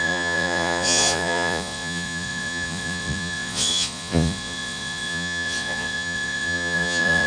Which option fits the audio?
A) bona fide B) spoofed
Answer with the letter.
B